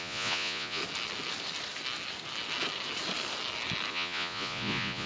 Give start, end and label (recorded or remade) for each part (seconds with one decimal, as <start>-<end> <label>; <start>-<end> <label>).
0.0-0.8 remade; 0.8-3.9 recorded; 3.9-5.1 remade

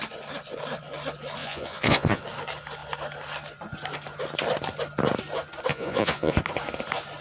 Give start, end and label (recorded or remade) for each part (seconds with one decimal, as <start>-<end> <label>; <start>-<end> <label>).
0.0-1.4 recorded; 1.4-2.2 remade; 2.2-5.7 recorded; 5.7-6.3 remade; 6.3-7.2 recorded

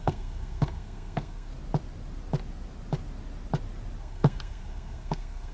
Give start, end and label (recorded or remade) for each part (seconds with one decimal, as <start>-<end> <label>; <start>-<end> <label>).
0.0-1.5 remade; 1.5-4.0 recorded; 4.0-5.5 remade

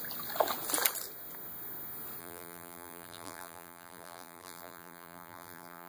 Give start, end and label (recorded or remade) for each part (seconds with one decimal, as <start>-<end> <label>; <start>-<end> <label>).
0.0-2.2 recorded; 2.2-5.9 remade

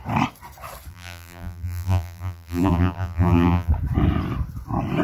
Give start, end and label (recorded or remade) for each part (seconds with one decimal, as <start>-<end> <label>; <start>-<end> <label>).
0.0-0.9 recorded; 0.9-3.7 remade; 3.7-5.0 recorded